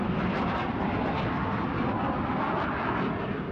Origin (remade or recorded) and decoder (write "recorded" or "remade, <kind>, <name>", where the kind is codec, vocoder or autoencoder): recorded